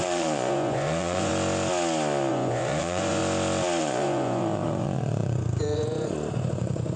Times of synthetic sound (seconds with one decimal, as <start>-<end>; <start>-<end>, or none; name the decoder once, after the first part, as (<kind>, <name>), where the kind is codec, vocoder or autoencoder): 0.0-1.3 (vocoder, Vocos); 2.3-3.2; 3.8-7.0